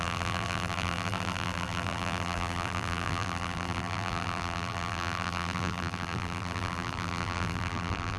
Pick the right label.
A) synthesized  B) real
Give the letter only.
A